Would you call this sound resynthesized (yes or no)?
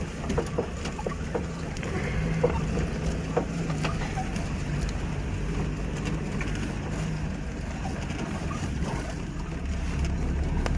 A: no